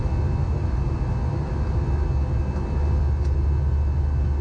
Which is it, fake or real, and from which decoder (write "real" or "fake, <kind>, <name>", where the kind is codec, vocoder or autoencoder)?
real